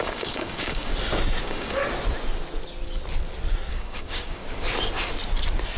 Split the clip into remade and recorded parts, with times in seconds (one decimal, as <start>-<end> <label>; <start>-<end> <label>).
0.0-0.9 remade; 0.9-1.4 recorded; 1.4-1.8 remade; 1.8-3.7 recorded; 3.7-4.4 remade; 4.4-5.8 recorded